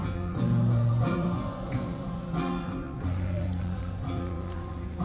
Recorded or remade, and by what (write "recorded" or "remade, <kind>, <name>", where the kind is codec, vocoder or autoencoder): remade, vocoder, Vocos